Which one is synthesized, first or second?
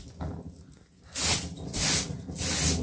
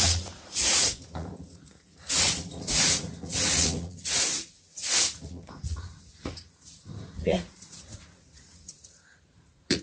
second